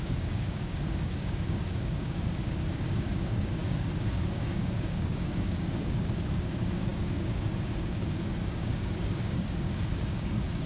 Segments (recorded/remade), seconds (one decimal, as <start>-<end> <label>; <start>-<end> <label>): 0.0-10.7 remade